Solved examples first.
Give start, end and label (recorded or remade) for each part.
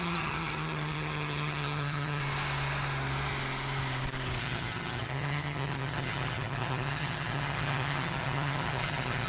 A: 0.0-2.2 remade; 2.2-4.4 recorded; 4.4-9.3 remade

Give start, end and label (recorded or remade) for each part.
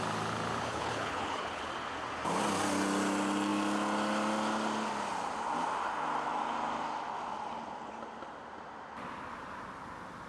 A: 0.0-0.7 recorded; 0.7-1.6 remade; 1.6-10.3 recorded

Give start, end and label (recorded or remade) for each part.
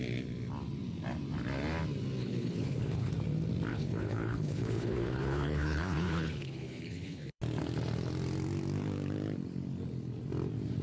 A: 0.0-2.2 recorded; 2.2-3.1 remade; 3.1-3.7 recorded; 3.7-7.4 remade; 7.4-10.8 recorded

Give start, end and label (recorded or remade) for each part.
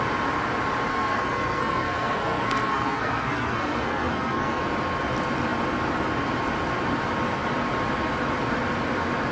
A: 0.0-0.9 recorded; 0.9-4.6 remade; 4.6-9.3 recorded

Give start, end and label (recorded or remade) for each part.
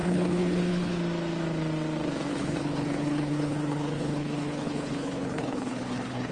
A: 0.0-1.0 remade; 1.0-2.3 recorded; 2.3-6.3 remade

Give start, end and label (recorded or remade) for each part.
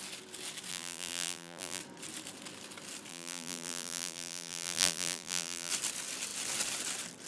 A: 0.0-0.7 recorded; 0.7-1.8 remade; 1.8-3.1 recorded; 3.1-5.7 remade; 5.7-7.3 recorded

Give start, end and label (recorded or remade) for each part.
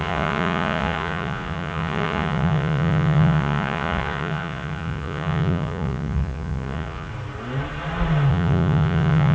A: 0.0-7.1 remade; 7.1-8.3 recorded; 8.3-9.3 remade